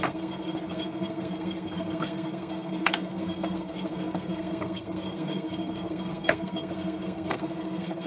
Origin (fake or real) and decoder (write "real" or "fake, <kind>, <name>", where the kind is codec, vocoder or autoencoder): fake, codec, SNAC